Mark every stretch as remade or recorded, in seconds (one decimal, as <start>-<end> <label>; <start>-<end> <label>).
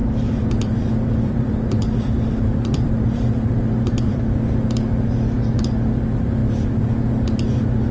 0.0-4.2 remade; 4.2-7.9 recorded